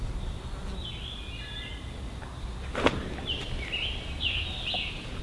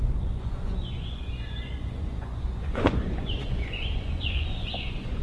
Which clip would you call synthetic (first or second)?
second